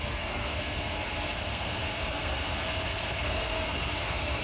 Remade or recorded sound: remade